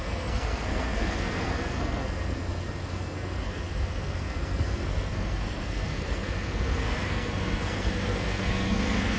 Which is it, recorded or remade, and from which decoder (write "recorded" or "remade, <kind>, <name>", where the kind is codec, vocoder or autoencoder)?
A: remade, codec, SNAC